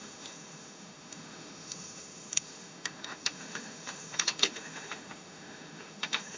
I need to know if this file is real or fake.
fake